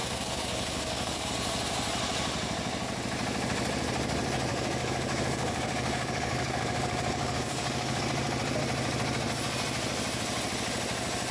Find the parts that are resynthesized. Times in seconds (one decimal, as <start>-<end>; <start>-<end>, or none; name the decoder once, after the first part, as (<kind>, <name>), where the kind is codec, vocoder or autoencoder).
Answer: 0.0-1.3 (codec, DAC); 4.5-8.0